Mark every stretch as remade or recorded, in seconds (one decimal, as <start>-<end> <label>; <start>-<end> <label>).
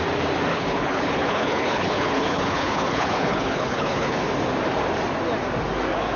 0.0-0.5 recorded; 0.5-4.2 remade; 4.2-6.2 recorded